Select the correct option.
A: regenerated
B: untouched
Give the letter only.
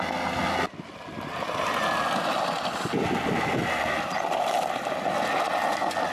B